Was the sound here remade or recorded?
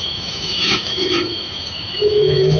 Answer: remade